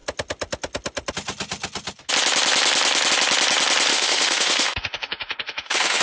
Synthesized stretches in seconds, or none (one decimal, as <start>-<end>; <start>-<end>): 3.9-6.0